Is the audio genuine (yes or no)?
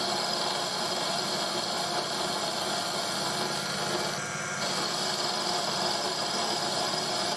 yes